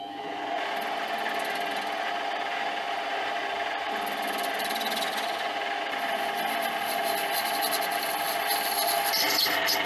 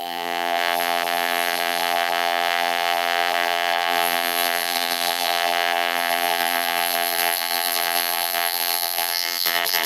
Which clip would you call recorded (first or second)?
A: first